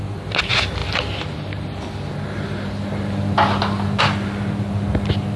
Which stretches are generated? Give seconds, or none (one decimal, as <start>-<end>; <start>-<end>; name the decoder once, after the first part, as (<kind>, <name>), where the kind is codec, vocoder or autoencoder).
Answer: none